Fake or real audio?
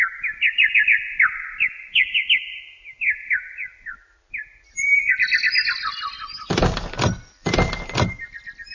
real